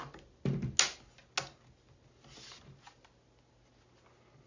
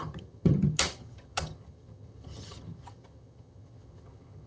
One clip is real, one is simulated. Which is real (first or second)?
first